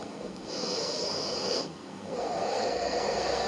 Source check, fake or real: fake